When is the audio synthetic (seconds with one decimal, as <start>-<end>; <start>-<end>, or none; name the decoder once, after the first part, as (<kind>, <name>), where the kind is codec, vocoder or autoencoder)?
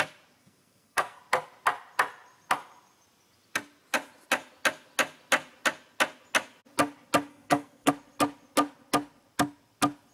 0.4-1.2 (codec, SNAC); 7.3-7.9